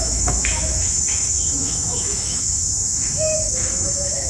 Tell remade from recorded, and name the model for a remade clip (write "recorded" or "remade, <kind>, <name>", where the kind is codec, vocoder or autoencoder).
remade, autoencoder, DAC-VAE